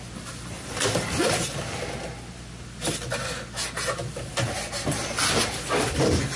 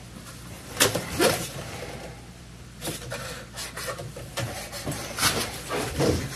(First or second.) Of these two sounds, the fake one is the second